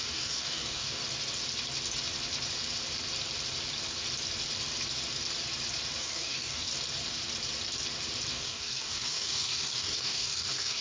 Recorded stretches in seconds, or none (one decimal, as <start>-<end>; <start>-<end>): 1.0-6.0; 6.7-8.3